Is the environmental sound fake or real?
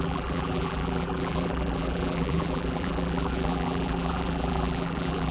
fake